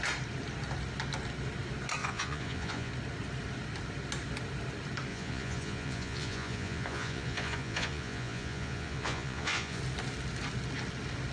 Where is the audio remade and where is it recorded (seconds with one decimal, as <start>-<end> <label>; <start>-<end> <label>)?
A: 0.0-2.0 recorded; 2.0-2.9 remade; 2.9-5.1 recorded; 5.1-9.8 remade; 9.8-11.3 recorded